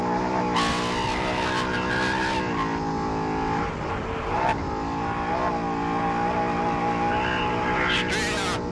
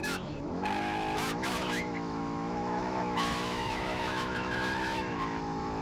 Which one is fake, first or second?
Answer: second